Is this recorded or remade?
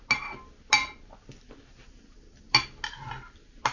recorded